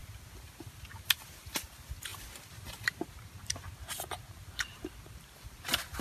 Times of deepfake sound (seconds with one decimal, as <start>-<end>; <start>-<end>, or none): none